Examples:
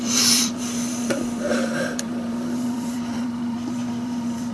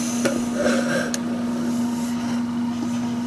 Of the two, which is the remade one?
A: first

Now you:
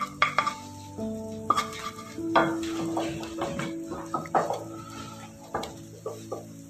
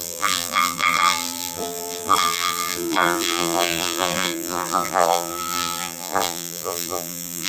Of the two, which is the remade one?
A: second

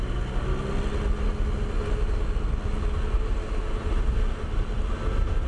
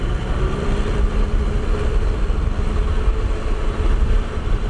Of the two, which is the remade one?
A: second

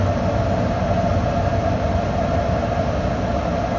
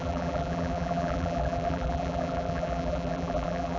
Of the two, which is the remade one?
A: second